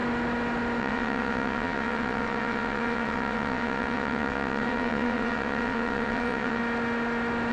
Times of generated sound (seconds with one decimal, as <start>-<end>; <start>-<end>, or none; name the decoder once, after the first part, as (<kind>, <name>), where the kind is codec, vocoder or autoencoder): 0.8-6.6 (vocoder, WaveNeXt)